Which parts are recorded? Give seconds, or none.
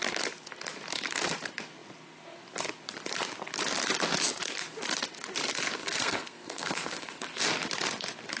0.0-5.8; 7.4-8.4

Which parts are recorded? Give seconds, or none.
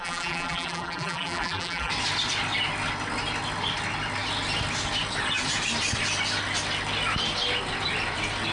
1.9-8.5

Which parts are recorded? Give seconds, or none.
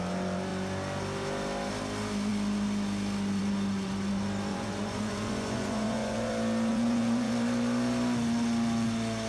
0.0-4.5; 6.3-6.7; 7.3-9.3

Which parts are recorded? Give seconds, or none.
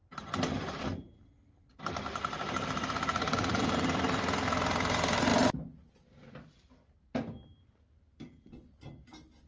0.0-3.1; 3.6-9.5